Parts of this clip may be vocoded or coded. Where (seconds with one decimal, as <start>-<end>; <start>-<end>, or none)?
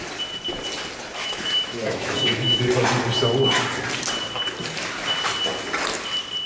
1.2-2.6